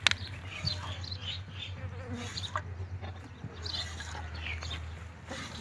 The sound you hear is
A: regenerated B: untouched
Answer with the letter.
B